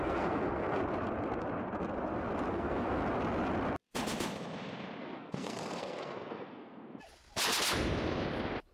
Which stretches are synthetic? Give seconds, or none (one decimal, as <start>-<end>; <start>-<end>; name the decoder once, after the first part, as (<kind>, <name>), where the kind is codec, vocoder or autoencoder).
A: 0.0-0.8 (codec, SNAC); 2.5-3.0; 5.0-6.8